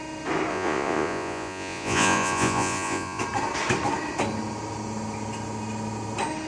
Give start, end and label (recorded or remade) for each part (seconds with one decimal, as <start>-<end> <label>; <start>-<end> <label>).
0.0-0.5 recorded; 0.5-3.2 remade; 3.2-6.5 recorded